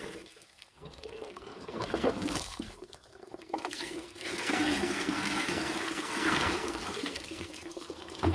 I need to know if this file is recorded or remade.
remade